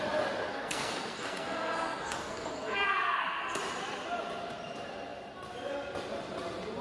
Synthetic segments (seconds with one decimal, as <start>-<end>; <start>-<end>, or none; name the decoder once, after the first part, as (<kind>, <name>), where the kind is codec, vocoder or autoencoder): 0.5-3.6 (codec, SNAC)